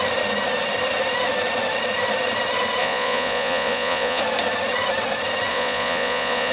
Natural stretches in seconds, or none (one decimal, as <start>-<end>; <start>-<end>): 0.0-2.8; 4.2-5.5